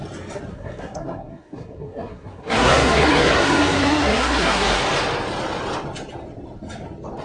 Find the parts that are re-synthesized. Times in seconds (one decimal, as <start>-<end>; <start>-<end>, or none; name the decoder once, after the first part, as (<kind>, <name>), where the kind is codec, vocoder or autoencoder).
0.5-4.8 (codec, SNAC)